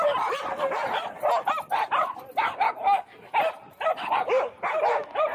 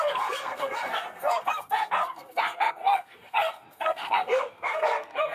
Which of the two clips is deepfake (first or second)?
second